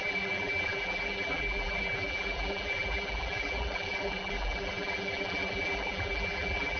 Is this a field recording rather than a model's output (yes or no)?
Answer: no